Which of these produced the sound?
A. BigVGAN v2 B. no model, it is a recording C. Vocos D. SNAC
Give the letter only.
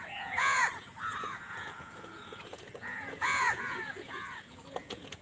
C